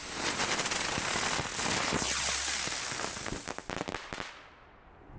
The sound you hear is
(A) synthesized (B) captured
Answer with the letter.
B